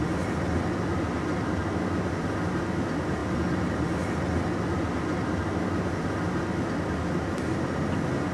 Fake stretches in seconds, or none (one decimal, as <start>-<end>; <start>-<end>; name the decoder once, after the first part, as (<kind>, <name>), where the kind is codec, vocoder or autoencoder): none